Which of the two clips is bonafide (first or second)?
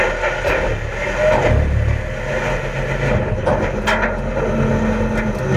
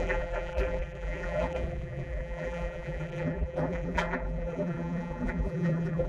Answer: first